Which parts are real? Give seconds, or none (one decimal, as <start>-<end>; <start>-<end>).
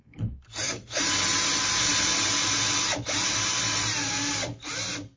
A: 1.0-5.2